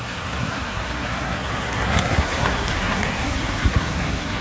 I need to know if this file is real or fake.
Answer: fake